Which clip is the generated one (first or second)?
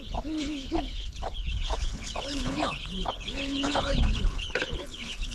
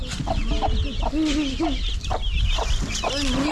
first